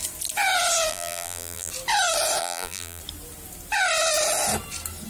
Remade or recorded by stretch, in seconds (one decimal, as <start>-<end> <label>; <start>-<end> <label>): 0.0-0.9 recorded; 0.9-1.7 remade; 1.7-2.4 recorded; 2.4-3.0 remade; 3.0-5.1 recorded